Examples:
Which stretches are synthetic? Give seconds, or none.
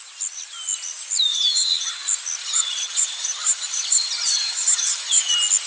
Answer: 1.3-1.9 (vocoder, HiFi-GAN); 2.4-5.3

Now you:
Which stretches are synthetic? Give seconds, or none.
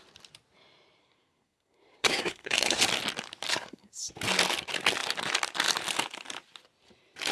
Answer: 1.0-2.8 (codec, SNAC); 3.5-4.0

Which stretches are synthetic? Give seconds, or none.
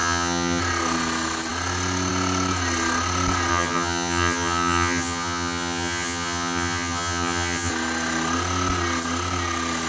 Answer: 0.0-0.6 (vocoder, HiFi-GAN); 3.5-7.7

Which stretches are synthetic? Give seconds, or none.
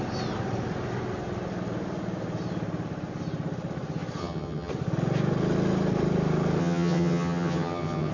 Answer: 4.2-4.7 (vocoder, HiFi-GAN); 6.6-8.1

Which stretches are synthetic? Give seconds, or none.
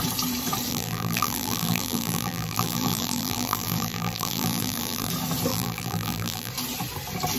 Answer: 0.7-5.1 (vocoder, BigVGAN v2); 5.5-6.5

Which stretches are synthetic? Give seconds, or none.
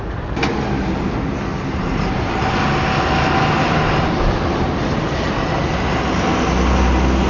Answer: 1.5-2.6 (vocoder, BigVGAN v2)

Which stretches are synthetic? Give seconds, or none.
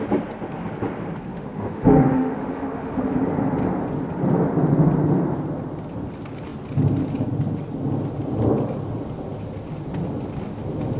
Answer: 1.3-3.1 (autoencoder, DAC-VAE)